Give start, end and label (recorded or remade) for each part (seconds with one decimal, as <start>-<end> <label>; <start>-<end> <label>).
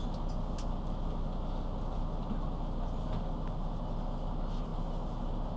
0.0-5.6 recorded